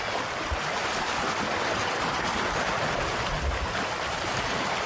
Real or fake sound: real